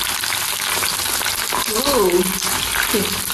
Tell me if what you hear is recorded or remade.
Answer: recorded